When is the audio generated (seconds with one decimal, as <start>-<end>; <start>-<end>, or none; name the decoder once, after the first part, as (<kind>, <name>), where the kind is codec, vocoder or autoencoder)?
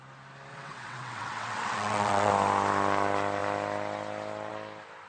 0.5-2.3 (vocoder, WaveNeXt)